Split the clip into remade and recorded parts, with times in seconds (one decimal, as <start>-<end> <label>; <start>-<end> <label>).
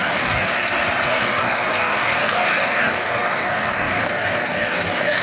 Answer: 0.0-0.6 remade; 0.6-1.1 recorded; 1.1-5.2 remade